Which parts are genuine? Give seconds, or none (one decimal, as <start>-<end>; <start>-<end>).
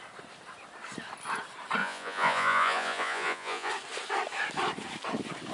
0.0-1.8; 3.7-5.5